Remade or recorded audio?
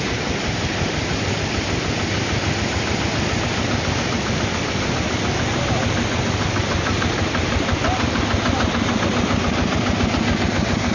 remade